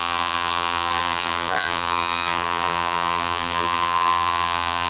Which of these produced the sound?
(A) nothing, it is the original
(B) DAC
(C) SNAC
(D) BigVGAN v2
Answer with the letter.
D